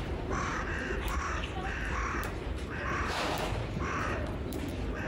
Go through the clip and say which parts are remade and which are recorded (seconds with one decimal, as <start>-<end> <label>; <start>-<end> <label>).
0.0-5.1 remade